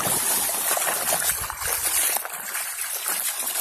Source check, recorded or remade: recorded